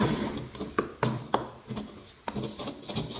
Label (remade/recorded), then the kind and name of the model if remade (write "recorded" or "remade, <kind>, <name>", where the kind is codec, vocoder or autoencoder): recorded